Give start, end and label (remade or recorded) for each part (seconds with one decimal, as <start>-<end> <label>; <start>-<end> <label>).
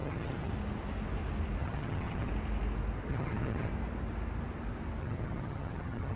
0.0-0.5 remade; 0.5-1.6 recorded; 1.6-2.3 remade; 2.3-3.1 recorded; 3.1-3.7 remade; 3.7-5.0 recorded; 5.0-6.2 remade